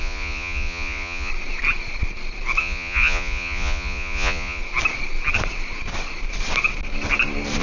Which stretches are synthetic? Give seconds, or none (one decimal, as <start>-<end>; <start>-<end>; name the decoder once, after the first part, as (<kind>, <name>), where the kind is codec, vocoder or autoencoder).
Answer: 0.0-1.3 (vocoder, Vocos); 2.6-4.6

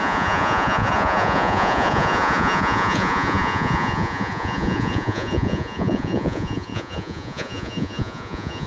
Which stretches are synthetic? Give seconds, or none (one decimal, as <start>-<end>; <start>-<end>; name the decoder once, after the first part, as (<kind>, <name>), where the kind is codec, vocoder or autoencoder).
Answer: 0.0-8.7 (vocoder, Vocos)

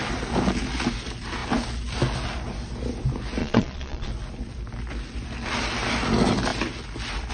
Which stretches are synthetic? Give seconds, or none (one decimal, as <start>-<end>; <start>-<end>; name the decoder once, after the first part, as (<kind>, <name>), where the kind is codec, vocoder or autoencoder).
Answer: 3.4-4.1 (vocoder, Vocos)